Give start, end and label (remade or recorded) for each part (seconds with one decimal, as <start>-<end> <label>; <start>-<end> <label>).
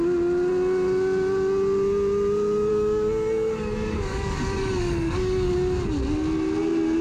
0.0-2.7 recorded; 2.7-5.5 remade; 5.5-7.0 recorded